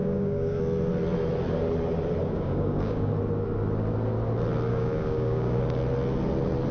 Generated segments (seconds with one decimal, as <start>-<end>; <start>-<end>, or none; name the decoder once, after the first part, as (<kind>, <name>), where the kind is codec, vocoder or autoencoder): 0.0-0.6 (codec, DAC); 2.2-3.1; 4.7-5.6